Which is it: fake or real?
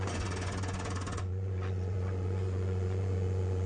fake